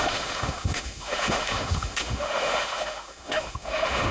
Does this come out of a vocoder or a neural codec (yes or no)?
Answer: yes